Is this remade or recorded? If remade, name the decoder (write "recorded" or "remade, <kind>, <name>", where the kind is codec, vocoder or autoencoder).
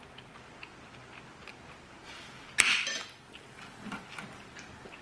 recorded